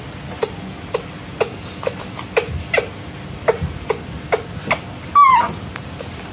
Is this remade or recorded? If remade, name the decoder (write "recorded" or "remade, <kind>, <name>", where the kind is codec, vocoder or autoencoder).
recorded